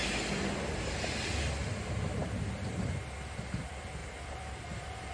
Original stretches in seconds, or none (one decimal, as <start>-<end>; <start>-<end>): 0.0-4.0